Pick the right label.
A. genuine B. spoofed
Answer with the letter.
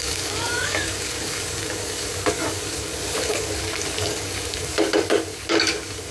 B